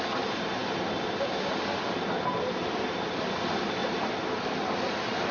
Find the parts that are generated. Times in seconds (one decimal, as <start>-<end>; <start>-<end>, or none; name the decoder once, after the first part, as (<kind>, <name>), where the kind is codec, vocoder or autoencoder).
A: none